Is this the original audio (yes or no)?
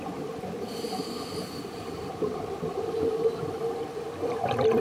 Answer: no